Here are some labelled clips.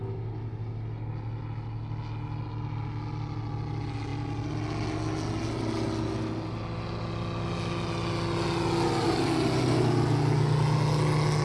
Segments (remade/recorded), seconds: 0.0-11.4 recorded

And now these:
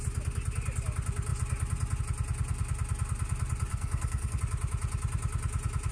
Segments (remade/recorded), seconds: 0.0-3.7 recorded; 3.7-4.4 remade; 4.4-5.9 recorded

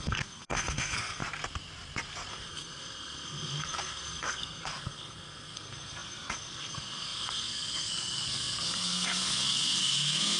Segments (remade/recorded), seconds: 0.0-1.2 remade; 1.2-2.3 recorded; 2.3-10.4 remade

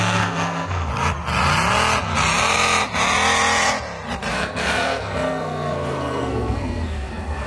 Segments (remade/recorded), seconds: 0.0-0.9 remade; 0.9-4.3 recorded; 4.3-7.5 remade

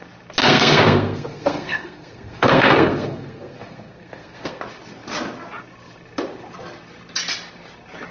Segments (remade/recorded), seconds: 0.0-0.4 recorded; 0.4-4.6 remade; 4.6-8.1 recorded

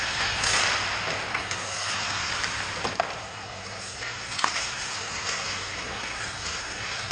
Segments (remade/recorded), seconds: 0.0-0.6 remade; 0.6-1.3 recorded; 1.3-2.3 remade; 2.3-3.2 recorded; 3.2-7.1 remade

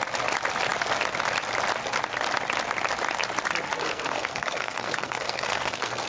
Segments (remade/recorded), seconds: 0.0-3.8 recorded; 3.8-6.1 remade